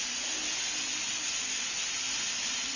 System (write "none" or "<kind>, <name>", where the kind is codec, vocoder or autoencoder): none